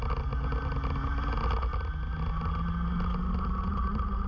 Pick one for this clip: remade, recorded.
recorded